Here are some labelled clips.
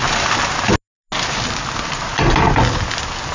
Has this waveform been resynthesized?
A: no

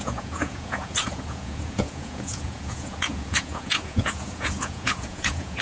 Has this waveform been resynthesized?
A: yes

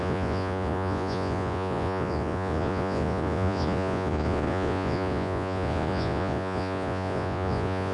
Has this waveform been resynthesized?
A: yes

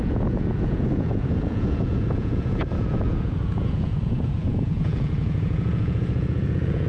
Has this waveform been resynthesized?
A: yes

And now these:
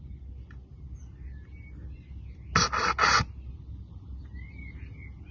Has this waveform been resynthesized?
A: no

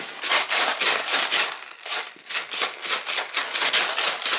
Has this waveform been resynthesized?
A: no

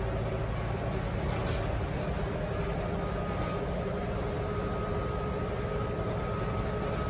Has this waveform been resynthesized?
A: no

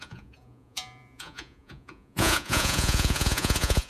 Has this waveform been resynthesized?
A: yes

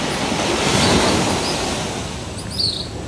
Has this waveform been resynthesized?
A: no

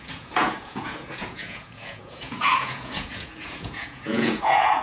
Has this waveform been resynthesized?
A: yes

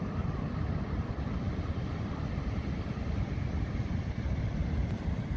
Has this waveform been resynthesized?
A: no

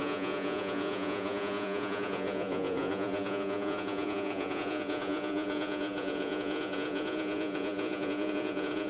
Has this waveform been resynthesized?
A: yes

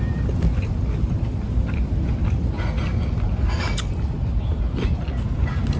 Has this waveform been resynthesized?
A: no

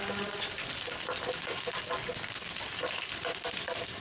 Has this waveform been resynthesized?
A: no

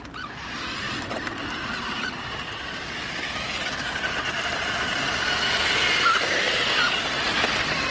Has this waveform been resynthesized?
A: no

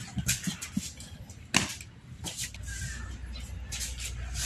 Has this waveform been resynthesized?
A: no